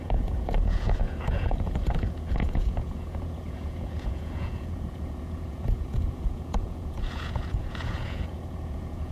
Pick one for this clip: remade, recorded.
remade